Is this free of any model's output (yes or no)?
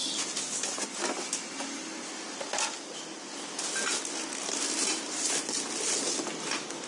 yes